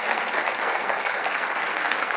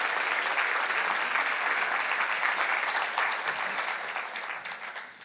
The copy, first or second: first